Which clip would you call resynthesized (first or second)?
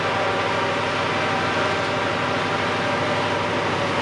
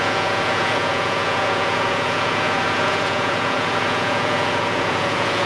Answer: second